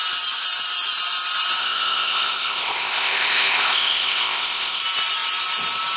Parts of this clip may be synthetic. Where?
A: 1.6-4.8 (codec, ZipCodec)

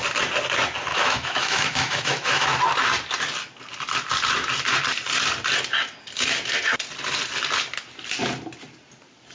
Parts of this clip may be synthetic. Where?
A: 0.9-2.6 (autoencoder, DAC-VAE)

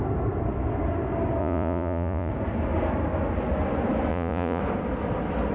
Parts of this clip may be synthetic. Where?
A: 1.4-2.3 (vocoder, Vocos); 4.1-4.6

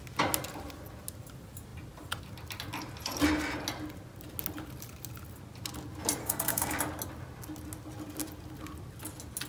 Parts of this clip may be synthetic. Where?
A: 6.2-6.8 (codec, SNAC)